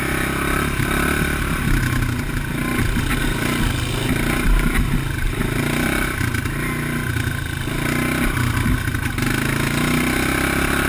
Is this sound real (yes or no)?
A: yes